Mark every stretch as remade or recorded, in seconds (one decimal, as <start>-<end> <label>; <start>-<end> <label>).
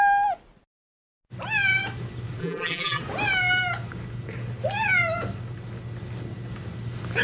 0.0-2.4 recorded; 2.4-3.0 remade; 3.0-7.2 recorded